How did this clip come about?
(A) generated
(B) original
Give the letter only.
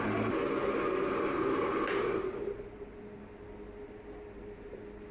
B